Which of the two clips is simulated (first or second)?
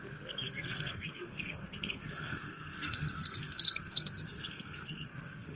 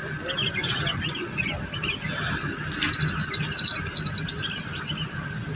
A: first